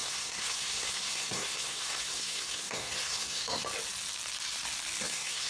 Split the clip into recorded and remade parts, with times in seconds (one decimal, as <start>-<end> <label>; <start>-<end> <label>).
0.0-3.6 remade; 3.6-5.0 recorded; 5.0-5.5 remade